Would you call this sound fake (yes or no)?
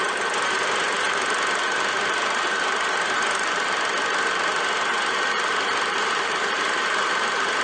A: no